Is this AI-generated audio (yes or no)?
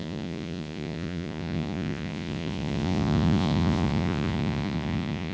yes